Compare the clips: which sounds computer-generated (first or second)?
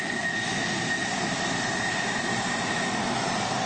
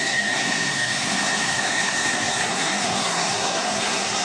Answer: second